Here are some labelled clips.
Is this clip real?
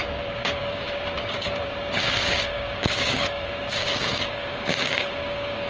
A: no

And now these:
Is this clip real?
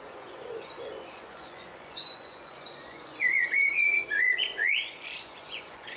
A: no